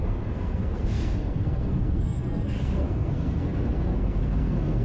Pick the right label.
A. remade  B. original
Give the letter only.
A